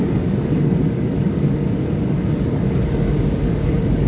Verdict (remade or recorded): remade